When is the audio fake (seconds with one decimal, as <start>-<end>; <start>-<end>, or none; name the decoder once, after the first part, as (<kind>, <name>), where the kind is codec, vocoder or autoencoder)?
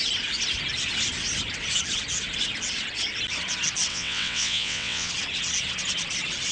3.9-5.1 (vocoder, WaveNeXt)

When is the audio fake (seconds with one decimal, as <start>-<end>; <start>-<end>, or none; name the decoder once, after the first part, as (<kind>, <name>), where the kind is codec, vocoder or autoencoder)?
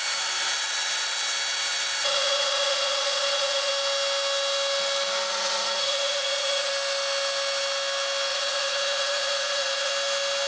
2.0-3.7 (vocoder, Vocos); 5.3-6.7; 8.3-9.9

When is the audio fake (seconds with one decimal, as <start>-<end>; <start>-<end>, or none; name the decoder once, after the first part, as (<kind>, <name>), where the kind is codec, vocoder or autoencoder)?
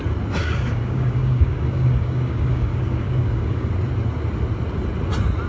0.4-3.7 (codec, DAC)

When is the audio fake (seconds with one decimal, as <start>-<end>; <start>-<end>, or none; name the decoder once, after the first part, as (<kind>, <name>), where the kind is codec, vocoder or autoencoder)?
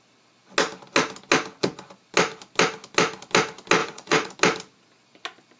3.8-4.3 (vocoder, Vocos)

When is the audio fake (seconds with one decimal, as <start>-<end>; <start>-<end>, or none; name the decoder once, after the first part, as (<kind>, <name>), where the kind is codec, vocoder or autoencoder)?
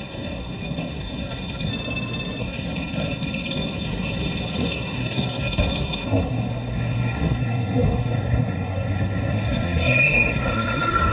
0.0-1.7 (codec, SNAC); 2.4-11.1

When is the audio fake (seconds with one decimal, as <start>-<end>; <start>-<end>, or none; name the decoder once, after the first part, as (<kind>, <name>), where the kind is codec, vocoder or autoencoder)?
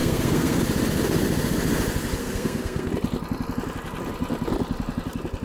0.0-0.6 (codec, SNAC); 2.2-2.9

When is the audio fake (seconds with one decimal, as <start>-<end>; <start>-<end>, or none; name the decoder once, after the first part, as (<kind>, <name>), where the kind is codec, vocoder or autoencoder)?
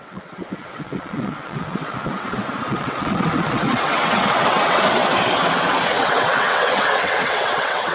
0.0-7.9 (vocoder, WaveNeXt)